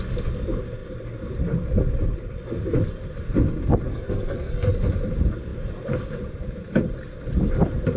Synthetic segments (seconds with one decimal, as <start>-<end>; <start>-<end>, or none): 3.9-4.7